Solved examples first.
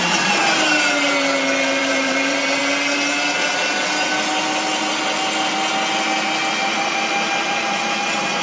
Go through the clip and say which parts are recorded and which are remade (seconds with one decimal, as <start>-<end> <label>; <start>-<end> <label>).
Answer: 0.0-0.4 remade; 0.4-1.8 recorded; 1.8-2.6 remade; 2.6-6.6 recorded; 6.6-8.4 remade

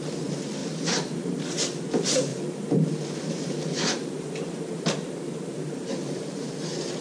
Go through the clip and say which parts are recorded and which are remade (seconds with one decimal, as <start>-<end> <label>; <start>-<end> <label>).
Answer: 0.0-0.6 recorded; 0.6-1.4 remade; 1.4-2.3 recorded; 2.3-6.5 remade; 6.5-7.0 recorded

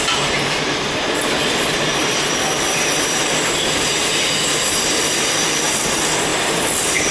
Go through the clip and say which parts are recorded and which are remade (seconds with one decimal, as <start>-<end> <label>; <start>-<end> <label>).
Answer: 0.0-2.0 recorded; 2.0-4.0 remade; 4.0-7.1 recorded

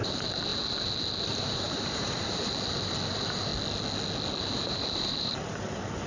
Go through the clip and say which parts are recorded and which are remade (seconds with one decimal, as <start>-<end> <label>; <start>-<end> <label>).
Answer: 0.0-3.5 remade; 3.5-4.4 recorded; 4.4-6.1 remade

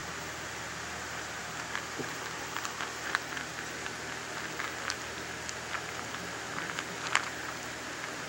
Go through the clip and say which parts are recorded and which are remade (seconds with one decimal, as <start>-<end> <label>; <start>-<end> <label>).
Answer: 0.0-8.3 recorded

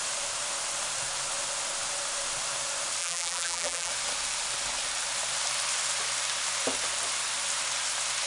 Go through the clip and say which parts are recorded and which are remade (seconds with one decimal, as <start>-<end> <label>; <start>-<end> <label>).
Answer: 0.0-3.0 recorded; 3.0-3.9 remade; 3.9-8.3 recorded

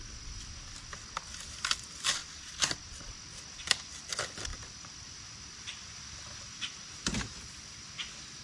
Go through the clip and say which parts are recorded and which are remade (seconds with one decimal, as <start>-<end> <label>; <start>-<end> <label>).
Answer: 0.0-2.2 recorded; 2.2-3.2 remade; 3.2-4.5 recorded; 4.5-7.9 remade; 7.9-8.4 recorded

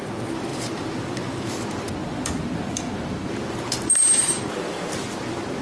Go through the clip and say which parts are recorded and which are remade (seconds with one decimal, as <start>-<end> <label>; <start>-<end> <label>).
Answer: 0.0-0.5 recorded; 0.5-1.4 remade; 1.4-2.0 recorded; 2.0-5.0 remade; 5.0-5.6 recorded